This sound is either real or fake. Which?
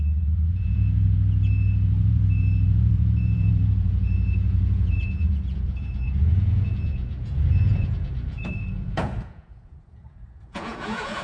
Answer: fake